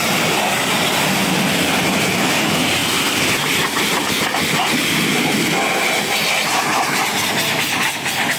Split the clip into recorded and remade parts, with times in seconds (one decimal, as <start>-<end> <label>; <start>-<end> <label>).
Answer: 0.0-8.4 recorded

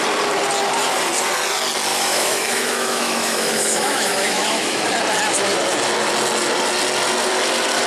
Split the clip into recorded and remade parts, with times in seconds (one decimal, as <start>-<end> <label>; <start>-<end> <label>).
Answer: 0.0-1.9 recorded; 1.9-4.8 remade; 4.8-7.9 recorded

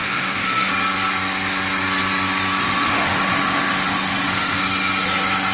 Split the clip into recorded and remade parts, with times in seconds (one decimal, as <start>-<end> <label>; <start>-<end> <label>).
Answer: 0.0-0.7 remade; 0.7-2.6 recorded; 2.6-4.6 remade; 4.6-5.5 recorded